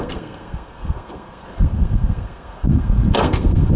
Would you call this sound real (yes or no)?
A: no